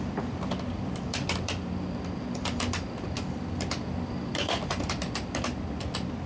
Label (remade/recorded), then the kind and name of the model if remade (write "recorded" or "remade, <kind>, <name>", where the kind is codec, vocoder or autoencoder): remade, vocoder, BigVGAN v2